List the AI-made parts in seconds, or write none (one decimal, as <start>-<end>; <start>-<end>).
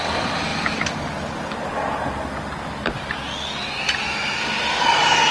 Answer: none